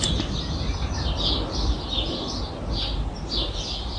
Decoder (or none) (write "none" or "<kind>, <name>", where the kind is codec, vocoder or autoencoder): none